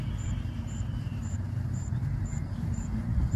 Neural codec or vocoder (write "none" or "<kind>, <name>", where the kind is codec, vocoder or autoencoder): vocoder, BigVGAN v2